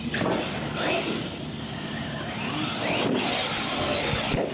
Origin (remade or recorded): recorded